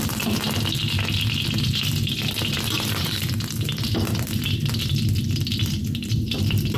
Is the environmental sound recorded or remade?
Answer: remade